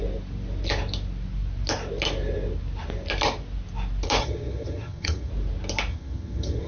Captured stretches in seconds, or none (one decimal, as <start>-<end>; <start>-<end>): 0.0-4.2; 5.3-5.9